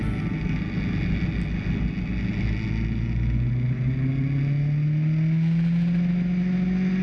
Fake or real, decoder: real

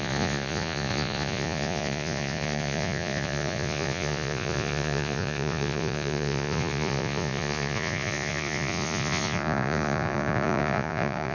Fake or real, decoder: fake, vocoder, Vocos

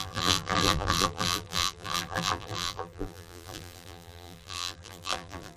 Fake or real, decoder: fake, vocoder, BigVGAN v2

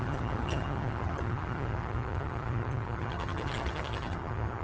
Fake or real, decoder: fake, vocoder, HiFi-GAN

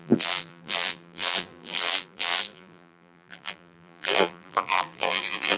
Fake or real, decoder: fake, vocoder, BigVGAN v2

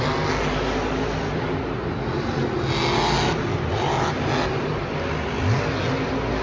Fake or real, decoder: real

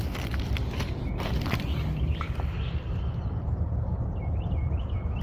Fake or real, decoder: real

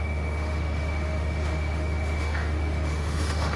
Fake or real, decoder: fake, autoencoder, DAC-VAE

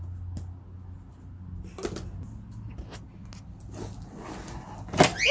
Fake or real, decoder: real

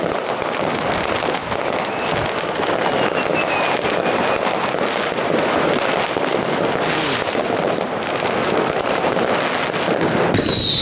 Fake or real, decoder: real